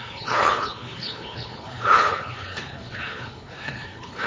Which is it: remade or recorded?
remade